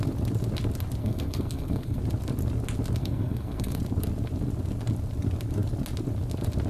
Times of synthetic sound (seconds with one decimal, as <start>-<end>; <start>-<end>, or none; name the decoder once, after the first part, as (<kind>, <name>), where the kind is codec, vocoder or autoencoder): 1.0-2.0 (codec, SNAC); 3.0-3.8